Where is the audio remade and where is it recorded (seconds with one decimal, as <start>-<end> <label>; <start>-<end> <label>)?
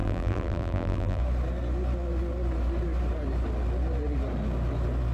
0.0-1.2 remade; 1.2-5.1 recorded